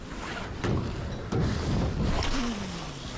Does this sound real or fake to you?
real